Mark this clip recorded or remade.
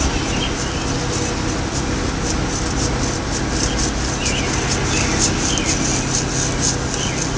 recorded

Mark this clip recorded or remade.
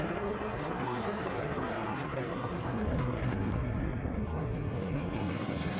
remade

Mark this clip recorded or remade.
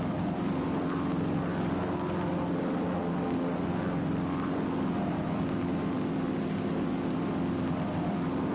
recorded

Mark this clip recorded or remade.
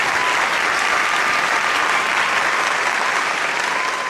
recorded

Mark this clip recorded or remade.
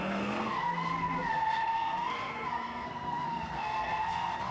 remade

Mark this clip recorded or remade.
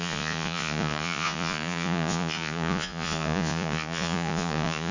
remade